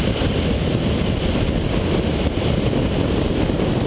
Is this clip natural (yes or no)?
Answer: yes